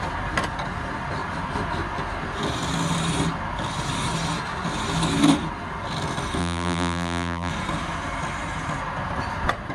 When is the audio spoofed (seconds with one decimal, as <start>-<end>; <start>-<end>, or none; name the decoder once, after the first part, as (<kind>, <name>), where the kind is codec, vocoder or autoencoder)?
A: 6.4-7.5 (vocoder, BigVGAN v2)